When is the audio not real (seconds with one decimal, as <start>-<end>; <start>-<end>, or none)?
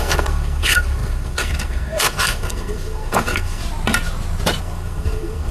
0.0-3.6; 4.6-5.5